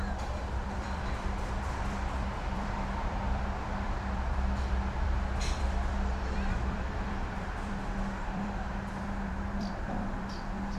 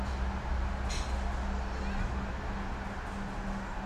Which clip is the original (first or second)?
second